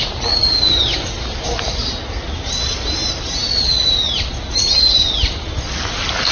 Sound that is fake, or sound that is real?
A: real